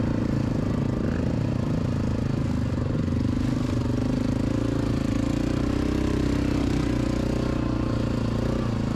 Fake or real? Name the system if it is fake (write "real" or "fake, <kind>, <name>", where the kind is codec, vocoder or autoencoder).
real